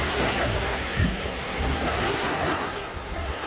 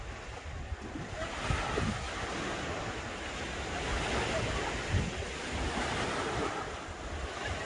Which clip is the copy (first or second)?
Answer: first